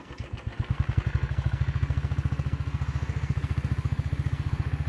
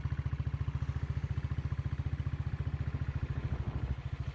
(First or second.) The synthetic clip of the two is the first